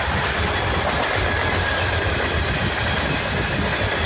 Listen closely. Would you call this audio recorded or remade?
recorded